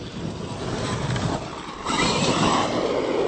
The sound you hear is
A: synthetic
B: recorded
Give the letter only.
B